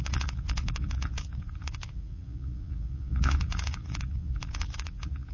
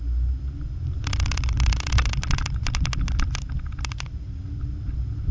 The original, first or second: second